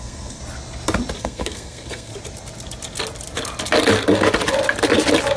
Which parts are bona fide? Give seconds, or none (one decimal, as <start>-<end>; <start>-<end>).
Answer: 0.4-1.2; 2.1-5.4